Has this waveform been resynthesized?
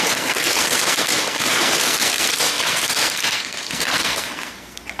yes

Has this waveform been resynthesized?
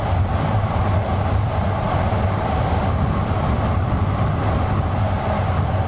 no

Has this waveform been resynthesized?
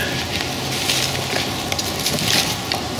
no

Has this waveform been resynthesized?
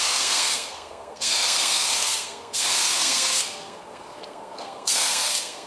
yes